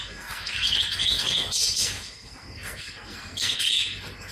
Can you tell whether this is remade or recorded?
remade